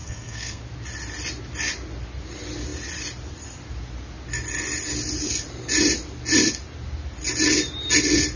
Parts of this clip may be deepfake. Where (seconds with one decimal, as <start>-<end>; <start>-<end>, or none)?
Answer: 0.0-0.6